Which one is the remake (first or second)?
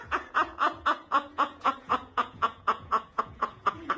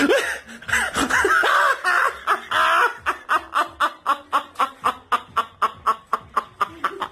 first